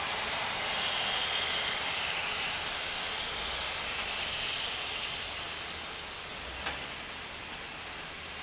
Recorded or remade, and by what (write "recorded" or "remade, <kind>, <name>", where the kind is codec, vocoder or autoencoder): recorded